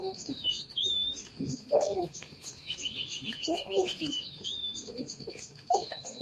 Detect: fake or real fake